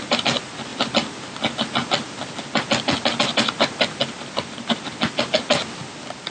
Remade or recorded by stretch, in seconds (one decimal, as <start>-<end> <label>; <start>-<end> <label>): 0.0-6.3 recorded